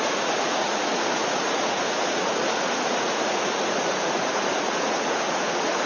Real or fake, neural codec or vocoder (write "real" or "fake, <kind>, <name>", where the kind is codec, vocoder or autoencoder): fake, vocoder, Vocos